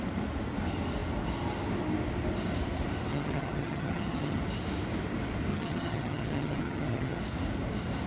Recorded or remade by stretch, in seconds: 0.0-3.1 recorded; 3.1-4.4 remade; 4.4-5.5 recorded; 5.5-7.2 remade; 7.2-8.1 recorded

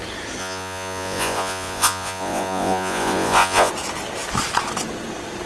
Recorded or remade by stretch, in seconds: 0.0-0.4 recorded; 0.4-3.7 remade; 3.7-5.5 recorded

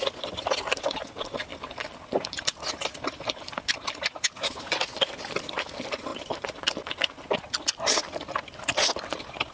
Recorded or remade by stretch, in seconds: 0.0-9.5 recorded

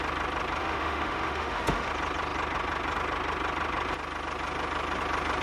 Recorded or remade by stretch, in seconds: 0.0-0.6 recorded; 0.6-1.9 remade; 1.9-5.4 recorded